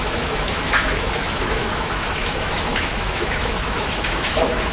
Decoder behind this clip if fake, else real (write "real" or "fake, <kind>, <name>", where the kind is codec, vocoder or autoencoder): fake, autoencoder, DAC-VAE